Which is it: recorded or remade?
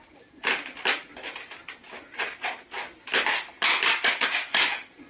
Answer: recorded